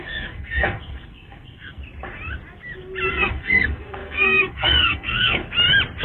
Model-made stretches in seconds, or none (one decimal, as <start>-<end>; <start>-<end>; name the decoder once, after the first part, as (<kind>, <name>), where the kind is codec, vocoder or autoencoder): 0.0-1.8 (codec, SNAC); 3.1-5.4